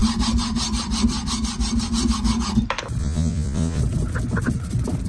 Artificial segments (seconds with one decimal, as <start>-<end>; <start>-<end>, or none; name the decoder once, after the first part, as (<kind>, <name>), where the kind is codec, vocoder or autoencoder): 3.0-3.8 (vocoder, Vocos)